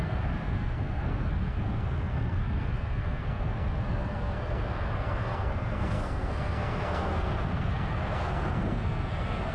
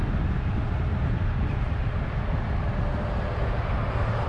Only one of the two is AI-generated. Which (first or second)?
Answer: first